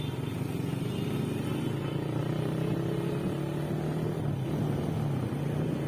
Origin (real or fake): real